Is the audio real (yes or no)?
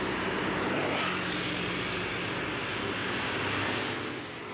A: yes